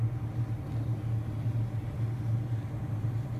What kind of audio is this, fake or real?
real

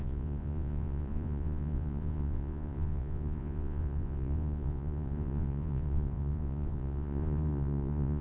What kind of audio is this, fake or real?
fake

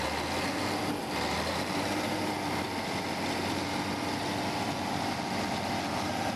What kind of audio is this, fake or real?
real